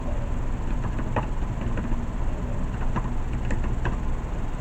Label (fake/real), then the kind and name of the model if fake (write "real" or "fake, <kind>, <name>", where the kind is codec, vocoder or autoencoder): real